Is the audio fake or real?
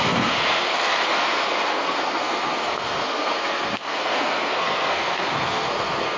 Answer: fake